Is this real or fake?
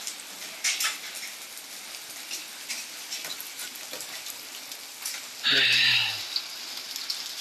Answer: real